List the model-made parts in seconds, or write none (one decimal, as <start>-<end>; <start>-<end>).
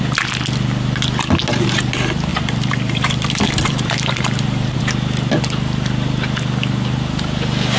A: 2.3-4.8